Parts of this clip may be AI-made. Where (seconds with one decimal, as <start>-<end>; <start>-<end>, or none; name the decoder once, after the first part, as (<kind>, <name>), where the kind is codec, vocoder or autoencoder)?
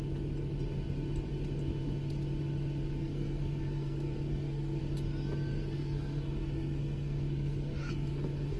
3.0-4.8 (codec, SNAC); 5.5-8.6